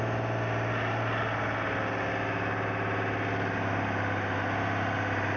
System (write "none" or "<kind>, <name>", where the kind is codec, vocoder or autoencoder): none